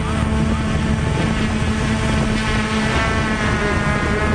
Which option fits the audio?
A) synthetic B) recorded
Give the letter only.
B